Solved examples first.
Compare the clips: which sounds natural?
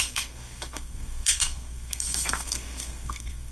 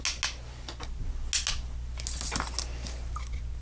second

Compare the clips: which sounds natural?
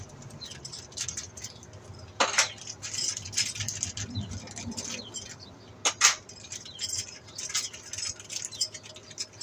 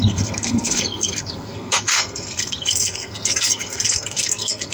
first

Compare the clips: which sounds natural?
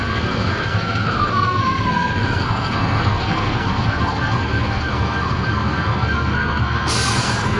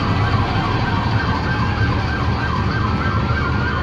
second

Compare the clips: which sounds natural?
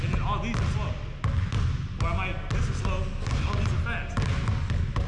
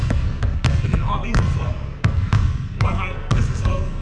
first